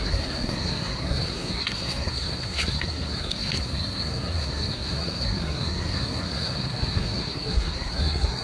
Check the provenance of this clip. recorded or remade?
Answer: remade